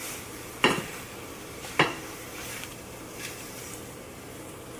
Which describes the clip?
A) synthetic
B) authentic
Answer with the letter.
A